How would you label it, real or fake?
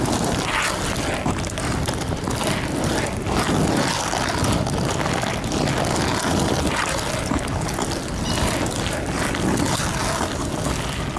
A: real